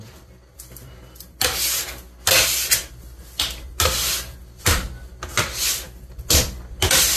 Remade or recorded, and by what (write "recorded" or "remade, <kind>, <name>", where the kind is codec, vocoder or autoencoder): recorded